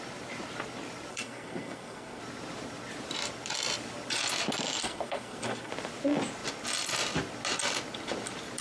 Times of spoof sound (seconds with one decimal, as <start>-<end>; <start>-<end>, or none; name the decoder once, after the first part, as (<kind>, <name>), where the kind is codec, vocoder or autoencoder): 1.1-2.2 (codec, SNAC); 4.8-5.7